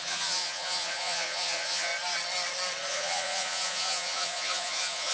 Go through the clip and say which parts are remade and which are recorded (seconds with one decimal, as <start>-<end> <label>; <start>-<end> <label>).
0.0-1.9 remade; 1.9-2.9 recorded; 2.9-5.1 remade